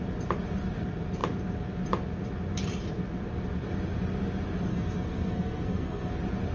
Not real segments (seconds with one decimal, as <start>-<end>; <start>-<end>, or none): 4.7-6.1

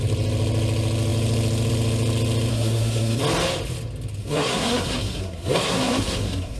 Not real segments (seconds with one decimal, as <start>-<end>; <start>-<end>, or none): 2.5-3.2; 4.2-6.6